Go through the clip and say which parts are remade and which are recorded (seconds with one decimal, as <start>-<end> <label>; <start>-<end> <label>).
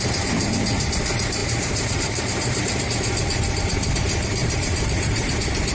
0.0-1.4 recorded; 1.4-2.8 remade; 2.8-4.4 recorded; 4.4-5.3 remade; 5.3-5.7 recorded